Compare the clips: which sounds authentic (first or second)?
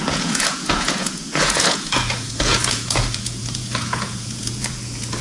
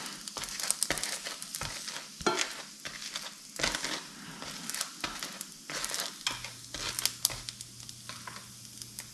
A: second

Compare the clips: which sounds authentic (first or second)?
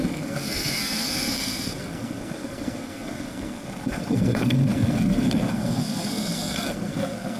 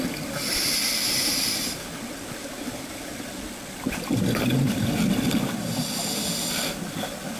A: second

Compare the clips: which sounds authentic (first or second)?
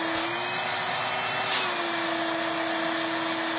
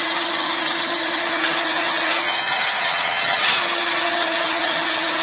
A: first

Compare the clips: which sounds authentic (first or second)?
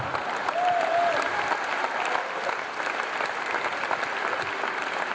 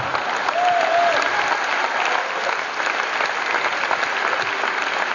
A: second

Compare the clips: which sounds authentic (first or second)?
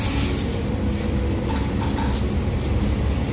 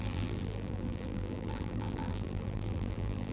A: first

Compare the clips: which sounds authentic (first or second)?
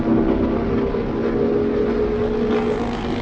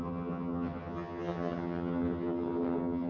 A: first